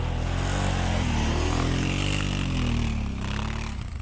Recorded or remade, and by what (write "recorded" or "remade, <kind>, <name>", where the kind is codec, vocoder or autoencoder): recorded